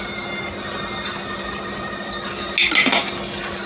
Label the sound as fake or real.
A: real